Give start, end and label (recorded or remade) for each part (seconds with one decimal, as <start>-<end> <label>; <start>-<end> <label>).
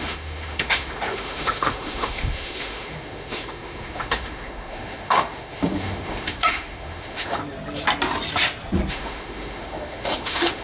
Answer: 0.0-7.4 remade; 7.4-8.9 recorded; 8.9-10.6 remade